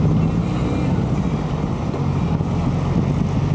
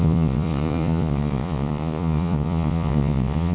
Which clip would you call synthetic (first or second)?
second